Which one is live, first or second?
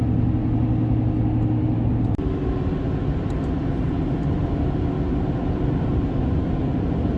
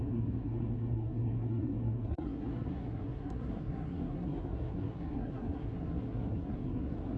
first